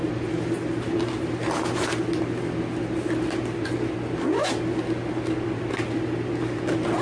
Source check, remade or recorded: recorded